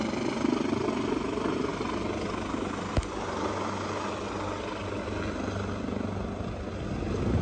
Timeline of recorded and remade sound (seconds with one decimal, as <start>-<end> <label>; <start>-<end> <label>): 0.0-7.4 recorded